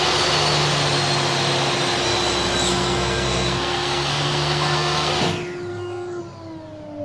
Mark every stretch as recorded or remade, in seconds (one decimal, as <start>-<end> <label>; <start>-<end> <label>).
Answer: 0.0-2.7 recorded; 2.7-5.1 remade; 5.1-5.7 recorded; 5.7-6.2 remade; 6.2-7.0 recorded